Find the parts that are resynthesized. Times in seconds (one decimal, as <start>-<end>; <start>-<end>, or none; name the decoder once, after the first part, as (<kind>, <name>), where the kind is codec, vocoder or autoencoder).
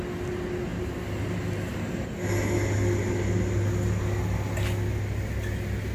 none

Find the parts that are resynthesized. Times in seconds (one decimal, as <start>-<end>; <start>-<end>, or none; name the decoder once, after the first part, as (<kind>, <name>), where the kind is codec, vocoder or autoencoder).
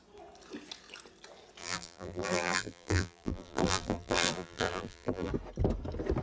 1.6-5.3 (vocoder, BigVGAN v2)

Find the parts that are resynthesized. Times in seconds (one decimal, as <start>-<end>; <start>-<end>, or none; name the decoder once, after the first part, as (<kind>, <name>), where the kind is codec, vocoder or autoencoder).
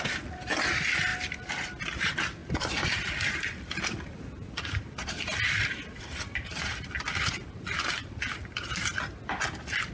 1.1-2.0 (vocoder, BigVGAN v2); 2.4-7.6; 8.0-9.0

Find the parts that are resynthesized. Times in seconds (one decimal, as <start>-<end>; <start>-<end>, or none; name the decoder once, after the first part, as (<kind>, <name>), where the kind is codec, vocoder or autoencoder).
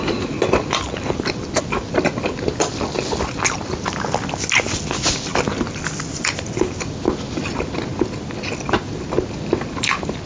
none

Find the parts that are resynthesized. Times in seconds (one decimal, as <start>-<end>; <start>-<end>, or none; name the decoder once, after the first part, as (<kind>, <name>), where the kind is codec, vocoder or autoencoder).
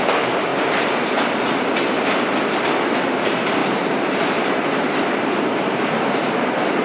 0.5-1.2 (vocoder, BigVGAN v2); 3.6-6.3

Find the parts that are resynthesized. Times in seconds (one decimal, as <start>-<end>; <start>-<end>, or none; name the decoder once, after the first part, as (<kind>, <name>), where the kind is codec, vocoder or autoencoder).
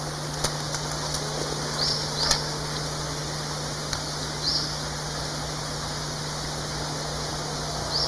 none